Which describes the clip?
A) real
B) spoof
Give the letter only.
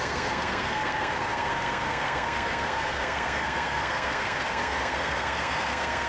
B